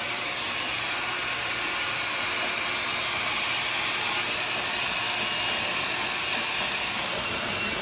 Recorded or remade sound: remade